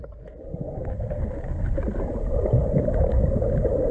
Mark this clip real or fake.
real